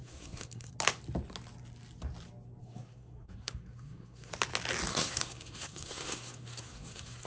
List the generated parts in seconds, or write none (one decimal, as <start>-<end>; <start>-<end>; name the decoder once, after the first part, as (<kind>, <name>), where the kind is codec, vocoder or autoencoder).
0.0-0.7 (codec, SNAC); 2.6-4.3; 4.9-7.3